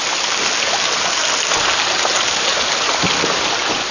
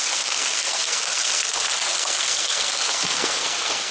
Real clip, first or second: first